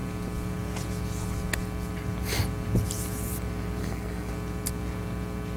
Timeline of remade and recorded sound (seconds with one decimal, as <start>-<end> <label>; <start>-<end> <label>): 0.0-3.8 recorded; 3.8-4.3 remade; 4.3-5.6 recorded